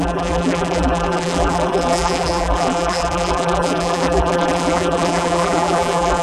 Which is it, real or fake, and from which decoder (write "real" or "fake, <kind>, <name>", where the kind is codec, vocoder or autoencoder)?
fake, vocoder, BigVGAN v2